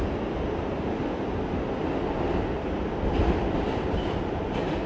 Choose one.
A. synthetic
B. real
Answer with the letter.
B